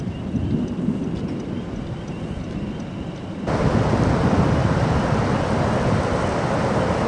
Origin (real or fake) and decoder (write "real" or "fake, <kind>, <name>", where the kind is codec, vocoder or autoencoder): real